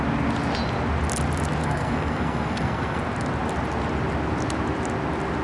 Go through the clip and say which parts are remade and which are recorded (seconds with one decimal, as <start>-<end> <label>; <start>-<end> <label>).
0.0-1.6 recorded; 1.6-3.0 remade; 3.0-5.4 recorded